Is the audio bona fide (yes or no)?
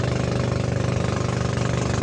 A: yes